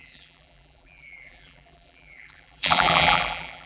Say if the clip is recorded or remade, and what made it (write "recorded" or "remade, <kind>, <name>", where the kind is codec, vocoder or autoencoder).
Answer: remade, vocoder, BigVGAN v2